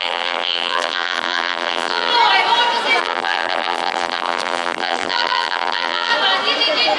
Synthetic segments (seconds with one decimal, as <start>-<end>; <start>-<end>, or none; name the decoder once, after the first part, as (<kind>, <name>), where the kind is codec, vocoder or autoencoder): 0.0-2.1 (vocoder, BigVGAN v2); 3.0-6.1